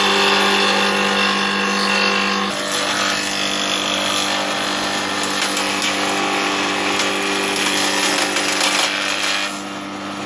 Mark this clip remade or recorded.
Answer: recorded